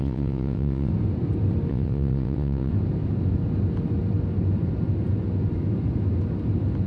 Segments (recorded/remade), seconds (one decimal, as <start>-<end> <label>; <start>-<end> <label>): 0.0-0.9 remade; 0.9-1.7 recorded; 1.7-2.7 remade; 2.7-6.9 recorded